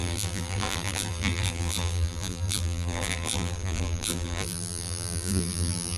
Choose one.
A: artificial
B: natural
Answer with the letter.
A